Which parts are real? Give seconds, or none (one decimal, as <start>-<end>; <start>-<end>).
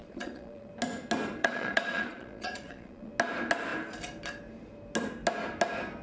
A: 0.7-1.4; 3.1-6.0